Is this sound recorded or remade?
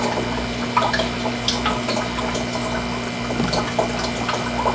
recorded